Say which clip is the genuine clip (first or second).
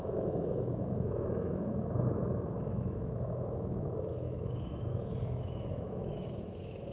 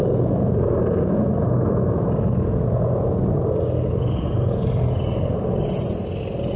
second